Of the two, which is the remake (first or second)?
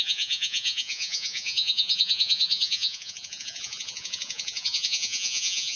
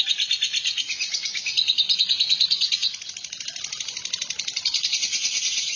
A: first